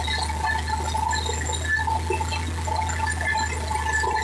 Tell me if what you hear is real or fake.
real